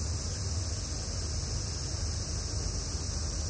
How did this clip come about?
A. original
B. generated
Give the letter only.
A